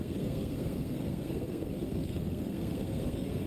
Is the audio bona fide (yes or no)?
no